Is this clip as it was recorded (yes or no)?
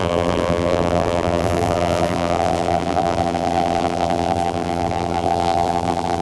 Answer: no